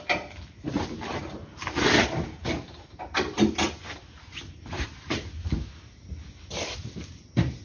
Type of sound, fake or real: real